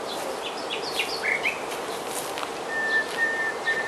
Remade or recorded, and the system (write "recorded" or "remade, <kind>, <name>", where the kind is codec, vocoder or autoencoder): recorded